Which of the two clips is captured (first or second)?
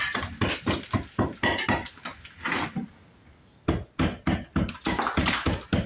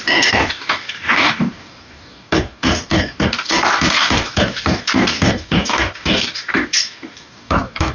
first